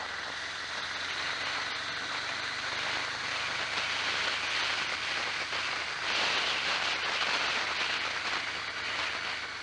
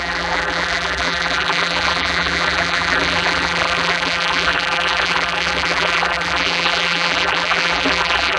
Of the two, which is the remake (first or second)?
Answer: second